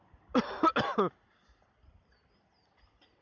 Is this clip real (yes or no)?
yes